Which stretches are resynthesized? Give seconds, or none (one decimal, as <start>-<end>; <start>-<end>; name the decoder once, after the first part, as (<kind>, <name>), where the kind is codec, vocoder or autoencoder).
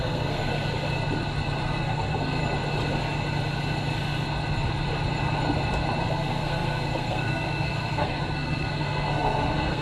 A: 0.0-0.5 (codec, SNAC); 1.6-2.4; 6.0-9.8